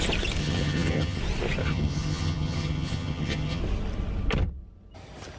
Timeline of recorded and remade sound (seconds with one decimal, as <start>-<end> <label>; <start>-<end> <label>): 0.0-0.4 recorded; 0.4-1.2 remade; 1.2-1.6 recorded; 1.6-3.6 remade; 3.6-5.4 recorded

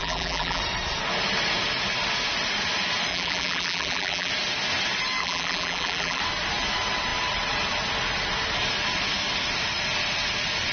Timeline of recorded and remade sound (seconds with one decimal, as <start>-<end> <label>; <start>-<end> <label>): 0.0-0.6 remade; 0.6-3.1 recorded; 3.1-4.3 remade; 4.3-5.2 recorded; 5.2-6.2 remade; 6.2-10.7 recorded